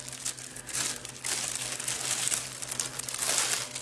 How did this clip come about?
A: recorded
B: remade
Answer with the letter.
A